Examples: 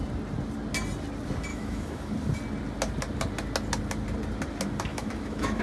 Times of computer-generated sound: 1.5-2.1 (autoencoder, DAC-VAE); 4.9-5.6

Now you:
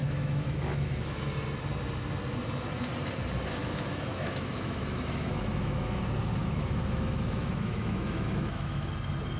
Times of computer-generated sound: 0.0-1.3 (autoencoder, DAC-VAE); 3.6-6.0; 6.4-8.9

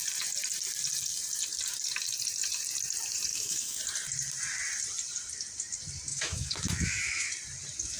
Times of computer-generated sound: 3.3-3.8 (autoencoder, DAC-VAE); 6.1-7.3